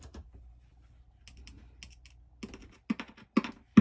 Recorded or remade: recorded